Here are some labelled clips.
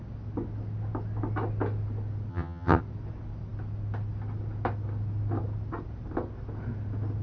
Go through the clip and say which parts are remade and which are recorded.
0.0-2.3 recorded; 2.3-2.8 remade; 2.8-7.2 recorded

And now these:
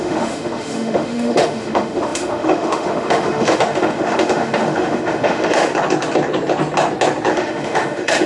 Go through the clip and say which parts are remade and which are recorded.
0.0-5.7 remade; 5.7-7.3 recorded; 7.3-8.3 remade

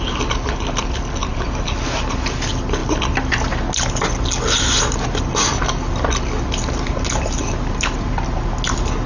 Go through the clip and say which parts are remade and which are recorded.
0.0-1.2 recorded; 1.2-1.7 remade; 1.7-9.1 recorded

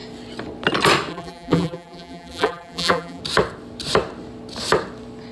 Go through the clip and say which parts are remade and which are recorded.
0.0-1.1 recorded; 1.1-3.2 remade; 3.2-5.3 recorded